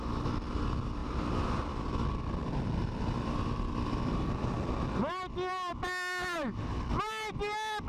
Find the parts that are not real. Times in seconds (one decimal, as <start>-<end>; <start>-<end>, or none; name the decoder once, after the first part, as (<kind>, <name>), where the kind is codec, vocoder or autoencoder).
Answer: 1.0-1.6 (vocoder, BigVGAN v2); 2.4-4.7